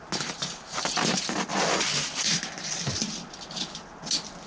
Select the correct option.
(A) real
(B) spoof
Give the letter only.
A